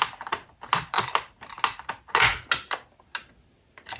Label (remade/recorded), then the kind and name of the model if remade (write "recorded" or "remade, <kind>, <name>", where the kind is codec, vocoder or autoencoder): recorded